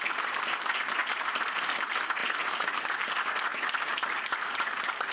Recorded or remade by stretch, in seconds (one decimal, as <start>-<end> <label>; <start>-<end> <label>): 0.0-1.0 recorded; 1.0-1.6 remade; 1.6-2.2 recorded; 2.2-3.1 remade; 3.1-3.5 recorded; 3.5-5.1 remade